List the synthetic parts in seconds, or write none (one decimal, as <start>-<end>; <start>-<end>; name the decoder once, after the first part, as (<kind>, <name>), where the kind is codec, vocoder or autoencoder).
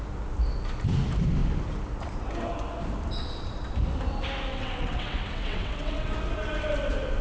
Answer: 4.5-6.1 (vocoder, WaveNeXt)